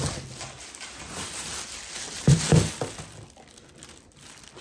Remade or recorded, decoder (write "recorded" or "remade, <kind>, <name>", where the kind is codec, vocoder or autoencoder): recorded